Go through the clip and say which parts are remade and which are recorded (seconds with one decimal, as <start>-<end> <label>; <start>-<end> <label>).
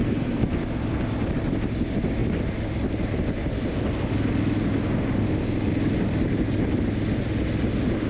0.0-0.5 remade; 0.5-8.1 recorded